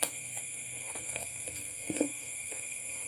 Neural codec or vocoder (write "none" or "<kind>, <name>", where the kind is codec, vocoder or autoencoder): codec, SNAC